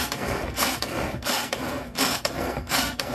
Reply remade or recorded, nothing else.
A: remade